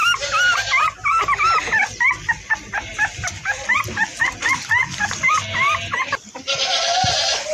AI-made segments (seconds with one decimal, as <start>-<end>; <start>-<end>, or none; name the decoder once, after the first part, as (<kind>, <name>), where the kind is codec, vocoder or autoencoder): 1.6-7.5 (vocoder, BigVGAN v2)